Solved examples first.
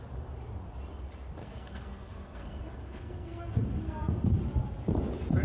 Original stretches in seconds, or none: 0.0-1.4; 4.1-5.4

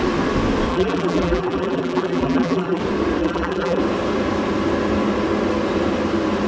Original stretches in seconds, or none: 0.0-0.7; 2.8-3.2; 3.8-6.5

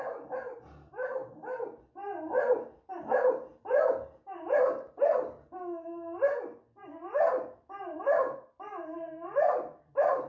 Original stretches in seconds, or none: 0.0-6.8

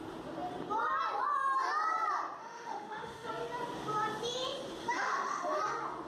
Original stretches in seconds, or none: 0.0-2.4; 3.3-4.8; 5.6-6.1

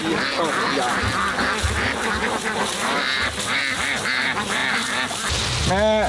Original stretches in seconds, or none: 0.0-6.1